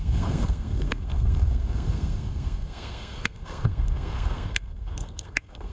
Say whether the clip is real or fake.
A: fake